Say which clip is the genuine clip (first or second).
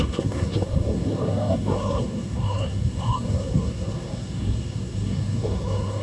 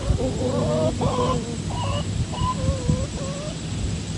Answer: second